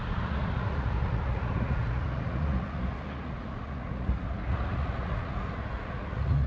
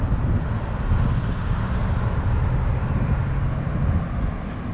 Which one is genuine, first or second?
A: second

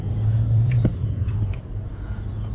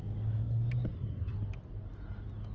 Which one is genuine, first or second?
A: second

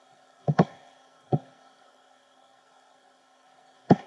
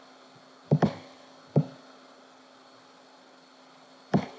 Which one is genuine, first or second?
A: second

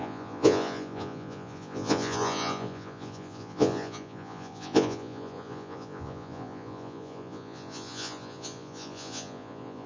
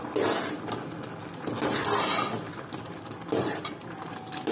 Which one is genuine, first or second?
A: second